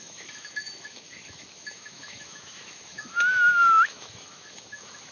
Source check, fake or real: fake